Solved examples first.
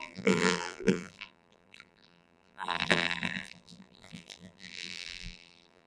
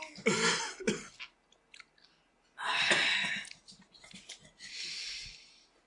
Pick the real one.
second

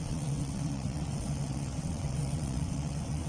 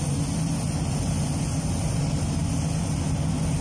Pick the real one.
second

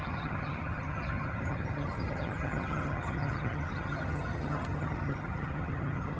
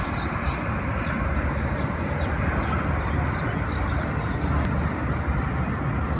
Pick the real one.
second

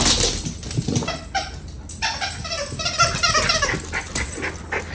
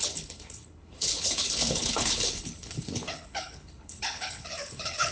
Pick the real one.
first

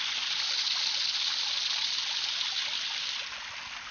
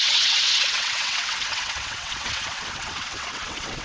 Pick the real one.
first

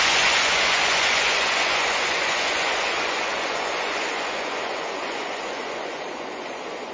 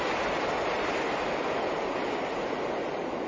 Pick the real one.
second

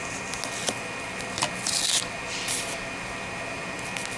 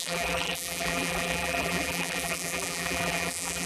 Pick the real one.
first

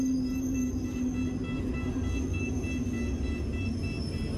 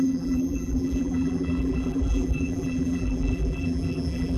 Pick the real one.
first